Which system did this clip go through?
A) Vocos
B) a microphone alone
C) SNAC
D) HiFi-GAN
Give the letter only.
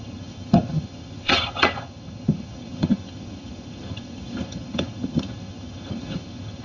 D